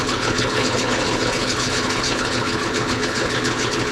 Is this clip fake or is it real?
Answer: fake